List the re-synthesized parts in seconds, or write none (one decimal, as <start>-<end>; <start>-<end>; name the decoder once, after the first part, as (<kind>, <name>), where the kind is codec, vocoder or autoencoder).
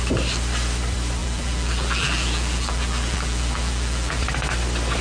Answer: 1.2-4.2 (vocoder, BigVGAN v2)